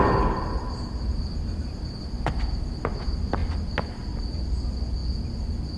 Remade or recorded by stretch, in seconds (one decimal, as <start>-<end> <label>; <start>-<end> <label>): 0.0-5.8 recorded